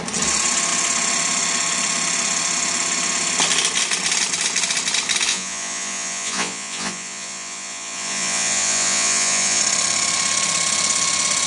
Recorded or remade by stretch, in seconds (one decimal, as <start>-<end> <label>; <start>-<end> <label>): 0.0-5.3 recorded; 5.3-9.6 remade; 9.6-11.5 recorded